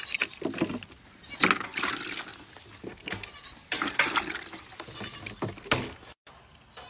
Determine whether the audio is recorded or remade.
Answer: recorded